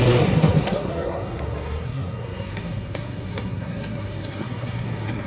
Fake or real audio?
fake